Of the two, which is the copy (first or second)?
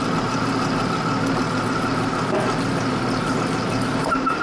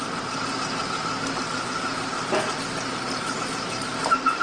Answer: second